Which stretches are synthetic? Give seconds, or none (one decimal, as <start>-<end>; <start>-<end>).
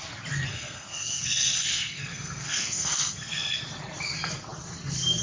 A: 0.5-3.6